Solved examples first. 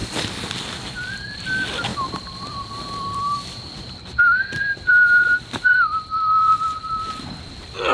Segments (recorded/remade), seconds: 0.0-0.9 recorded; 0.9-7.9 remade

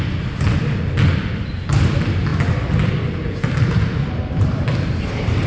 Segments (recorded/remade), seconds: 0.0-5.5 recorded

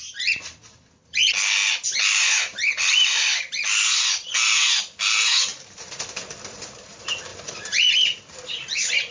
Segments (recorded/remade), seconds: 0.0-2.5 recorded; 2.5-3.5 remade; 3.5-5.5 recorded; 5.5-6.1 remade; 6.1-7.3 recorded; 7.3-7.9 remade; 7.9-9.1 recorded

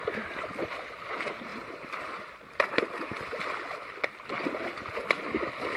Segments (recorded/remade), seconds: 0.0-1.5 recorded; 1.5-2.3 remade; 2.3-5.8 recorded

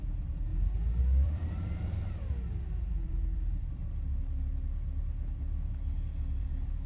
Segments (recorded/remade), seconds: 0.0-0.5 remade; 0.5-1.0 recorded; 1.0-3.8 remade; 3.8-6.4 recorded; 6.4-6.9 remade

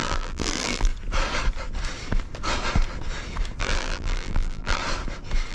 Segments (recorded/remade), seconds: 0.0-0.9 remade; 0.9-3.6 recorded; 3.6-4.8 remade; 4.8-5.5 recorded